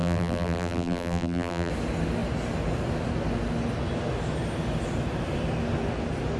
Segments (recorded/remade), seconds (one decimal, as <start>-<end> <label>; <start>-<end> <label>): 0.0-1.7 remade; 1.7-6.4 recorded